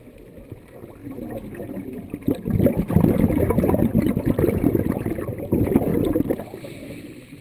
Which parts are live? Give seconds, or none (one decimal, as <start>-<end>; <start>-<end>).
1.0-3.2